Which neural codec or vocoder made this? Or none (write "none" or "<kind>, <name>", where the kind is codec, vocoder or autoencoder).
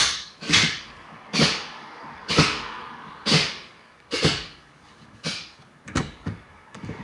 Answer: codec, DAC